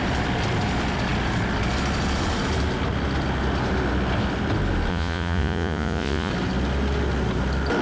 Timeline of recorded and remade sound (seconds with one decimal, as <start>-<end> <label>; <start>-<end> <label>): 0.0-4.9 recorded; 4.9-6.3 remade; 6.3-7.8 recorded